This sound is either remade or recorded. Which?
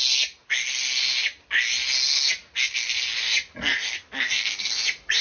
recorded